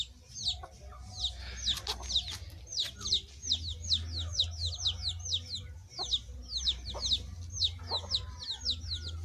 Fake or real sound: real